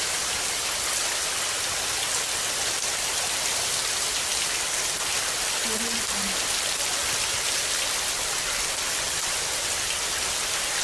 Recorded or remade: recorded